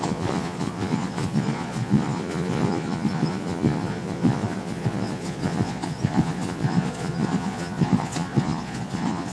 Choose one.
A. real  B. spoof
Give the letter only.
B